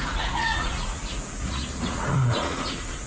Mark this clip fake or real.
fake